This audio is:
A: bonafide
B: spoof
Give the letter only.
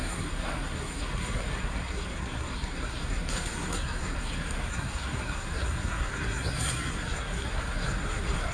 B